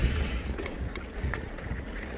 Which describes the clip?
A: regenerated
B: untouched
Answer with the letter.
A